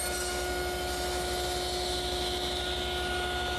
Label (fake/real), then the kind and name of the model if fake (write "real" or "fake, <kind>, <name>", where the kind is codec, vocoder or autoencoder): real